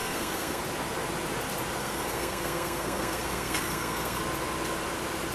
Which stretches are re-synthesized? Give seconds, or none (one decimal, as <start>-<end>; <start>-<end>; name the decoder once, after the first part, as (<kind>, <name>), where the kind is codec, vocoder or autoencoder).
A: 0.0-0.6 (codec, SNAC); 1.8-4.2